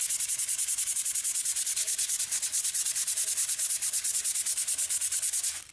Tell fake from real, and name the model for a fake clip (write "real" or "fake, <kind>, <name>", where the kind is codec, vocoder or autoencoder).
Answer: real